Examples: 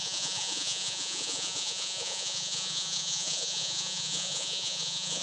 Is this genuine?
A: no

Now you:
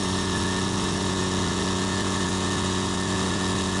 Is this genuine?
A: no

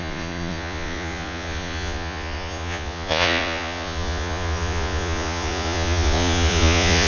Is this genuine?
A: no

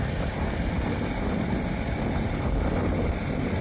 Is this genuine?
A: yes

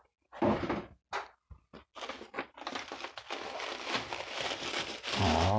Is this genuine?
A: yes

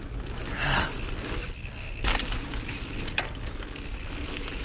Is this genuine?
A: yes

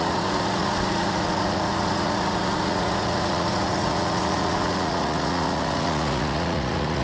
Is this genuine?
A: no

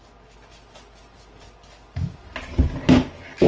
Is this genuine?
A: yes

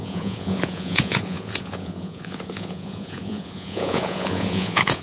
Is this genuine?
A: no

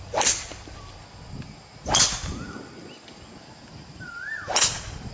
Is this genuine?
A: yes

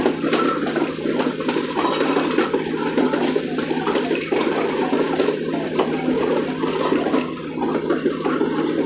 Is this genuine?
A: yes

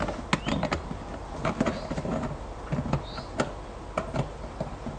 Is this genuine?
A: yes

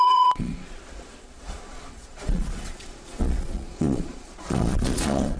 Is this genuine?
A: no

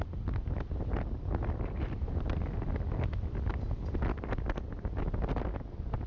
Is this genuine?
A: yes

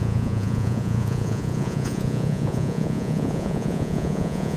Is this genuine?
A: no